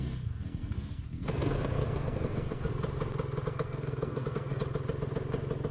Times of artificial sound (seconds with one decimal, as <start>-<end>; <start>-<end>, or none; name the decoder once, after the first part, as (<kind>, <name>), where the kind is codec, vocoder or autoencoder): 0.0-2.7 (codec, SNAC); 3.5-4.5